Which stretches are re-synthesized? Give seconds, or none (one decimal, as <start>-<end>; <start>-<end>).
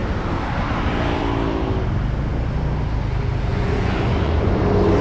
3.5-4.5